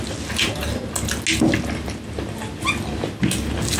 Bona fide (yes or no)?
yes